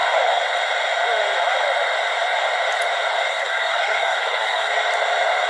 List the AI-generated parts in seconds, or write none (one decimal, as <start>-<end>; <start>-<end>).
3.3-4.7